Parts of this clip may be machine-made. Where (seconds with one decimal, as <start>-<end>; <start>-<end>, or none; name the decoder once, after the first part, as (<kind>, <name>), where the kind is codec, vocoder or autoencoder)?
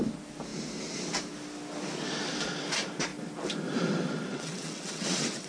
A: 4.3-5.5 (vocoder, WaveNeXt)